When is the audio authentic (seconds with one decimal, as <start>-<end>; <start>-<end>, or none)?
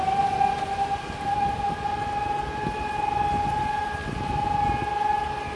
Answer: 0.0-5.6